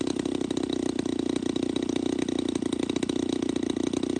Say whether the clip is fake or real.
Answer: real